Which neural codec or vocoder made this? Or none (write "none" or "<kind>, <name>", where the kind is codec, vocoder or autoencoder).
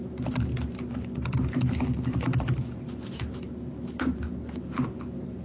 none